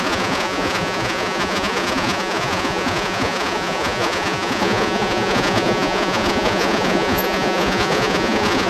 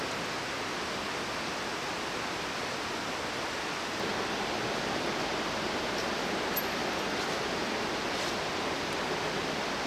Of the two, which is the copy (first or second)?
first